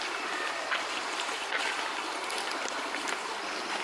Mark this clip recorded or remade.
recorded